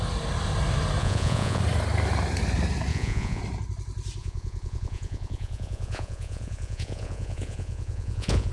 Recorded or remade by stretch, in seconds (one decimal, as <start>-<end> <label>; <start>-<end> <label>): 0.0-1.0 recorded; 1.0-1.6 remade; 1.6-2.9 recorded; 2.9-3.4 remade; 3.4-4.2 recorded; 4.2-8.5 remade